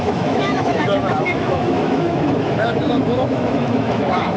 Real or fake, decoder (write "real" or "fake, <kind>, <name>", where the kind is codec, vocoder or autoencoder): fake, autoencoder, DAC-VAE